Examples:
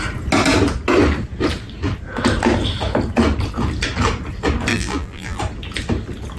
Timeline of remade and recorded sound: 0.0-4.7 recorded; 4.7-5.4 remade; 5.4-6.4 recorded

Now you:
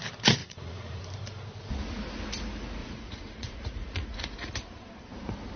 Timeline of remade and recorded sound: 0.0-0.4 recorded; 0.4-1.0 remade; 1.0-2.8 recorded; 2.8-4.5 remade; 4.5-5.6 recorded